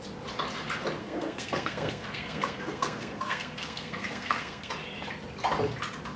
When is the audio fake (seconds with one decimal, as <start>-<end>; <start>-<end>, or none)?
1.0-4.7